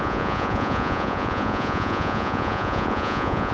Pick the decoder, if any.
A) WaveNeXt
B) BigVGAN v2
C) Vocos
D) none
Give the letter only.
C